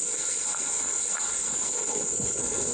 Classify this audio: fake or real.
fake